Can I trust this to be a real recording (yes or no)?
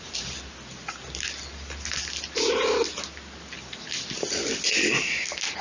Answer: yes